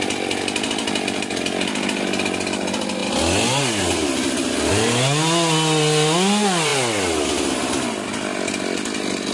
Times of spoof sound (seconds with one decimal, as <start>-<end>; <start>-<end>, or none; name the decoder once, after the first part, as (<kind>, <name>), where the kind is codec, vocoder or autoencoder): none